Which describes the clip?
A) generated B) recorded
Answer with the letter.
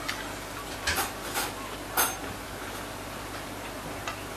B